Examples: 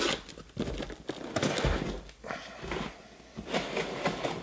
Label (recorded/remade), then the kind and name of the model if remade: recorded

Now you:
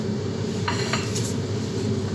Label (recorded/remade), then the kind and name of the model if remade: recorded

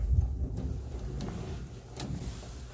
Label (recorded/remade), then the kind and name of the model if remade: recorded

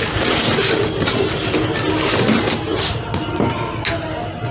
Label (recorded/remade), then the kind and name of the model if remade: recorded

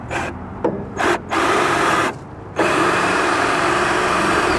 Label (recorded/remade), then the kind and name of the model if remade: remade, vocoder, BigVGAN v2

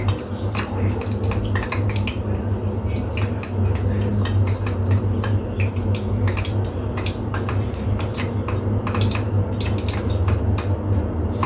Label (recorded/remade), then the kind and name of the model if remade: recorded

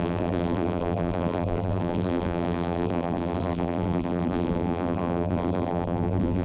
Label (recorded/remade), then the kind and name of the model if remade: remade, vocoder, BigVGAN v2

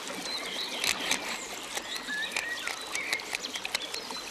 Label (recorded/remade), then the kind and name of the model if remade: recorded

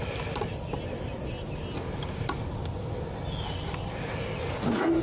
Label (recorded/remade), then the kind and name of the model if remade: recorded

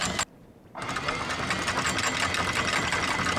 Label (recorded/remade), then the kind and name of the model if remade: recorded